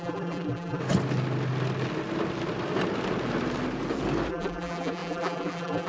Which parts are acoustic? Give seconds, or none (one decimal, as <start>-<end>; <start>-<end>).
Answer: 0.8-4.3